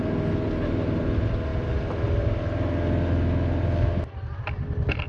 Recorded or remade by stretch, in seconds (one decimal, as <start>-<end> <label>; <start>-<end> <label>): 0.0-5.1 recorded